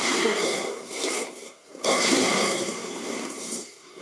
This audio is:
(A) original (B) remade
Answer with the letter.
B